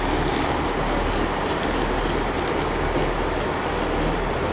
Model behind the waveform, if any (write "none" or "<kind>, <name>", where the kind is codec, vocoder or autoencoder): none